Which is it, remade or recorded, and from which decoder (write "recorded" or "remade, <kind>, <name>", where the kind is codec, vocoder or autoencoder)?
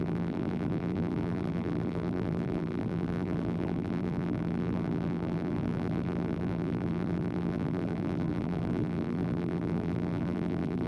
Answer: remade, vocoder, BigVGAN v2